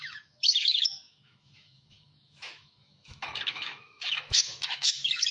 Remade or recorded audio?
remade